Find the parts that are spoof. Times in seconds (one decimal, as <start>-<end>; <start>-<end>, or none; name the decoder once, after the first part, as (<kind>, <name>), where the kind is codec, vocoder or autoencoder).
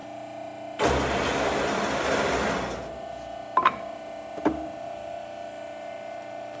none